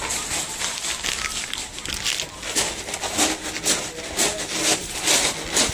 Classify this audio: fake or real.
real